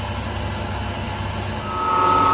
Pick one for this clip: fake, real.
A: real